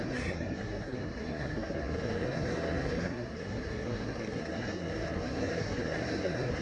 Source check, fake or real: fake